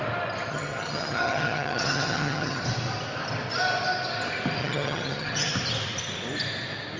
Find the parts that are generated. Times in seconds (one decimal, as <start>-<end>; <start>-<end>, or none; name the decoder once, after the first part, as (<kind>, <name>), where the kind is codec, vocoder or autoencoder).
0.5-2.6 (vocoder, HiFi-GAN); 4.6-5.5